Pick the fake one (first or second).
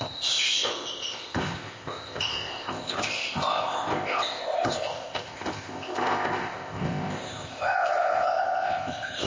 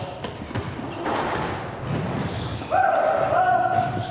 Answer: first